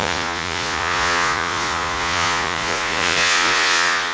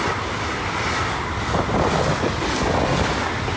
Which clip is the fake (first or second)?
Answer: first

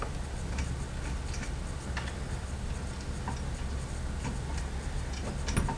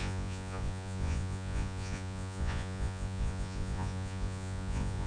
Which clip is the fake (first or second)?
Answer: second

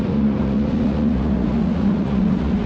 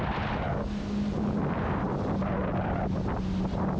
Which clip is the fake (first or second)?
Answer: first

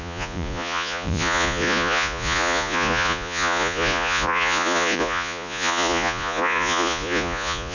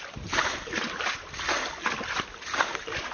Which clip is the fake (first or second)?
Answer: first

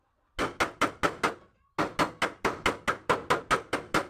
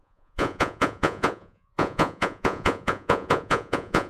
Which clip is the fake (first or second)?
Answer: second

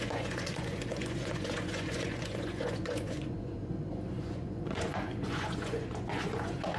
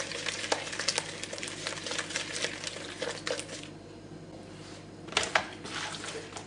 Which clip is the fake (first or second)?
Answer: first